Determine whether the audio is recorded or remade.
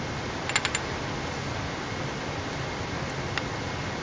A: recorded